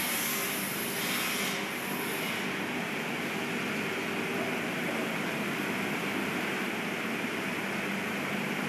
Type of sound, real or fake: real